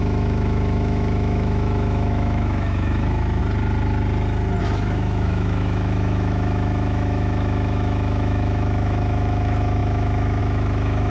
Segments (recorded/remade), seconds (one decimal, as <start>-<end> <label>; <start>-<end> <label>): 0.0-3.4 remade; 3.4-4.6 recorded; 4.6-11.1 remade